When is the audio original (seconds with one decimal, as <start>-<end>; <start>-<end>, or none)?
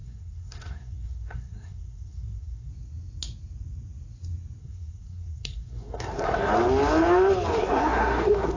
2.7-4.6; 6.5-7.6